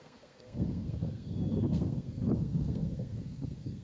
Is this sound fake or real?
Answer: fake